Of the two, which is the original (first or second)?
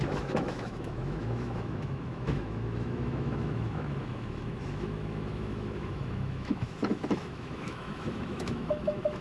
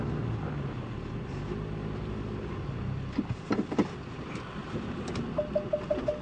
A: second